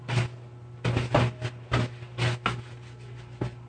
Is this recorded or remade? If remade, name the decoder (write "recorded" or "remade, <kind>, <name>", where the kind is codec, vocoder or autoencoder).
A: recorded